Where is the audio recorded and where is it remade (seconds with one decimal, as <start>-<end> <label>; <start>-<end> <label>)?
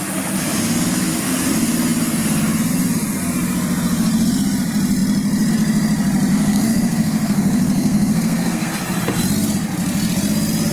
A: 0.0-6.3 recorded; 6.3-8.7 remade; 8.7-10.7 recorded